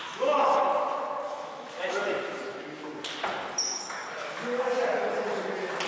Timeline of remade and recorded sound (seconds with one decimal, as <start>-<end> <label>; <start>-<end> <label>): 0.0-0.7 remade; 0.7-1.2 recorded; 1.2-2.0 remade; 2.0-3.5 recorded; 3.5-4.0 remade; 4.0-5.9 recorded